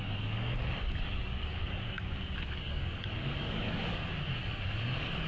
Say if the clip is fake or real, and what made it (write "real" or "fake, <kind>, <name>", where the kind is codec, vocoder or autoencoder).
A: fake, codec, DAC